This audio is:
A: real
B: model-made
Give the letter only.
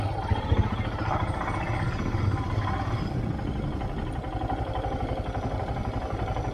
A